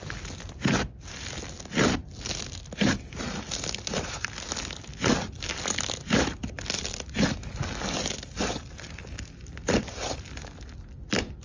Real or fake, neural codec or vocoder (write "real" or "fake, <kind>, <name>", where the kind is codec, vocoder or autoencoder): real